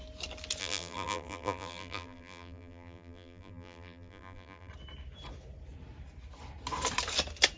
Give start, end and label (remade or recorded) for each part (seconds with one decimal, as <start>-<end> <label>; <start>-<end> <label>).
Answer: 0.0-0.6 recorded; 0.6-4.7 remade; 4.7-7.6 recorded